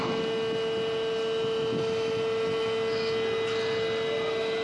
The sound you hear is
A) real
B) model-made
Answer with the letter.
A